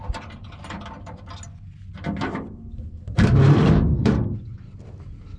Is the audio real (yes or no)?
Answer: yes